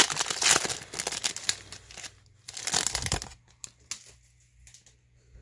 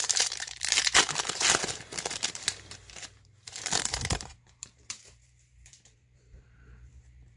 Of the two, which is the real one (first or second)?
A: first